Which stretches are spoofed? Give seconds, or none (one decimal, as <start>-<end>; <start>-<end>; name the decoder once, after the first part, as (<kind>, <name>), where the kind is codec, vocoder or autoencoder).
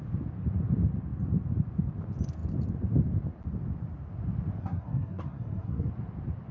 4.6-5.9 (codec, SNAC)